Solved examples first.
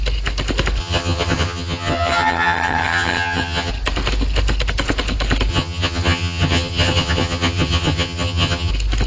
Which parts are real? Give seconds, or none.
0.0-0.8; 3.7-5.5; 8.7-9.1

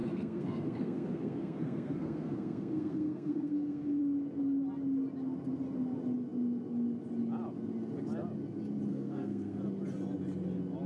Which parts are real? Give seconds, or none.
4.0-8.9; 9.6-10.9